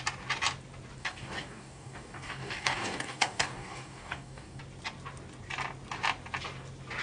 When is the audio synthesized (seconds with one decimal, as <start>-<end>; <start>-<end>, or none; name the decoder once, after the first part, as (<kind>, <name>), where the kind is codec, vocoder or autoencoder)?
1.0-4.6 (codec, DAC)